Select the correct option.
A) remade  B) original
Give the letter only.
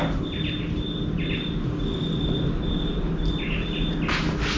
B